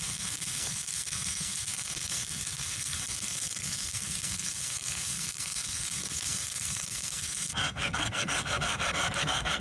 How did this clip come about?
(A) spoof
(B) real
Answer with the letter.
A